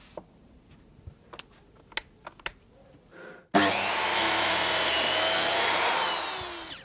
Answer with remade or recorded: recorded